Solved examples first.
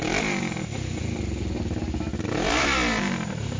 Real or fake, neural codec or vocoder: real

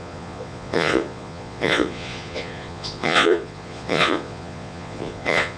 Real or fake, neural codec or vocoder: fake, vocoder, Vocos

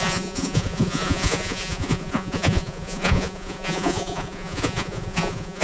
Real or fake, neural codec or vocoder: fake, vocoder, Vocos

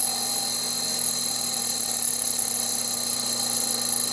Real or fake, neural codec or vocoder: real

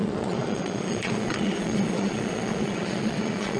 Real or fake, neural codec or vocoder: fake, vocoder, Vocos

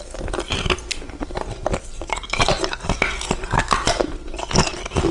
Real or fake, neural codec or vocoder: real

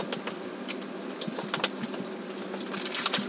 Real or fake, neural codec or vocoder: real